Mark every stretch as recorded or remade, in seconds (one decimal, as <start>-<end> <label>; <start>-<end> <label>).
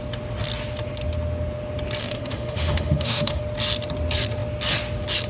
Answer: 0.0-2.0 recorded; 2.0-3.4 remade; 3.4-5.3 recorded